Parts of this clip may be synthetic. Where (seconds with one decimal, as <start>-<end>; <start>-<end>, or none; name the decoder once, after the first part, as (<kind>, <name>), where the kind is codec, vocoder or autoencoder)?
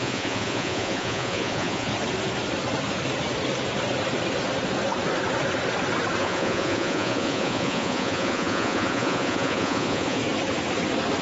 0.0-1.9 (vocoder, Vocos); 6.2-10.2